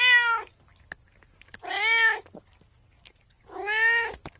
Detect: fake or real real